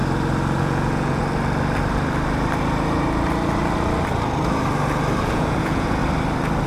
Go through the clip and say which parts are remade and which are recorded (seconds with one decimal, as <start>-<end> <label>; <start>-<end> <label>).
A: 0.0-0.6 recorded; 0.6-1.2 remade; 1.2-5.2 recorded; 5.2-6.0 remade; 6.0-6.7 recorded